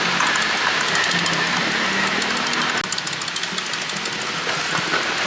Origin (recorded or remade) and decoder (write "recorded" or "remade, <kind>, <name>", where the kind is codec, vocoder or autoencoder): recorded